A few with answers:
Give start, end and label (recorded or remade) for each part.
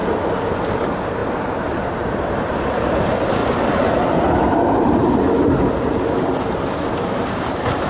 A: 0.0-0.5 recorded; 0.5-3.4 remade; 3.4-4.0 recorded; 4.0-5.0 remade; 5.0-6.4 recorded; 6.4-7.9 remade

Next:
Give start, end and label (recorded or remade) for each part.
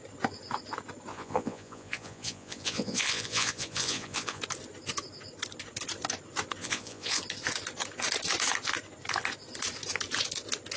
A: 0.0-1.1 recorded; 1.1-4.4 remade; 4.4-6.6 recorded; 6.6-7.2 remade; 7.2-10.8 recorded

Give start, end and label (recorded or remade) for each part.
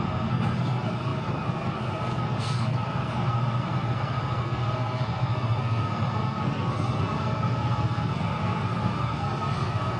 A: 0.0-10.0 remade